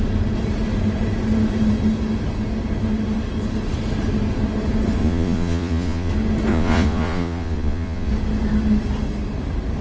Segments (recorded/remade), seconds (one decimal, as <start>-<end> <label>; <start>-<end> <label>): 0.0-5.0 recorded; 5.0-6.1 remade; 6.1-6.5 recorded; 6.5-8.1 remade; 8.1-9.8 recorded